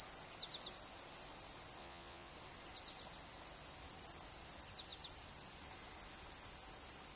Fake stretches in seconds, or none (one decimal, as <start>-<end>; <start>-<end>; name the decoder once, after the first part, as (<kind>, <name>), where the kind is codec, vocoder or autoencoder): 1.8-2.3 (vocoder, Vocos)